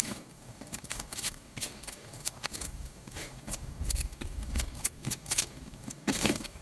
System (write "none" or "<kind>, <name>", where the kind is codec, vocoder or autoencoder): codec, DAC